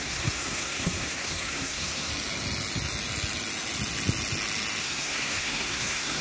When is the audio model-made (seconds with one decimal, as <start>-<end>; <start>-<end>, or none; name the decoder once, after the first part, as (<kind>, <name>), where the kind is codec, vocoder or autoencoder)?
0.0-2.1 (codec, SNAC); 4.8-6.2